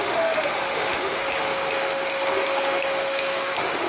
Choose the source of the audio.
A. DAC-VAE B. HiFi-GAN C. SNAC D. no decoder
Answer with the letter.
A